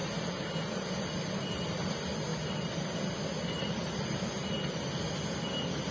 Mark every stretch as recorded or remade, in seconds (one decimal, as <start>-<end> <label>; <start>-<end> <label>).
0.0-5.9 recorded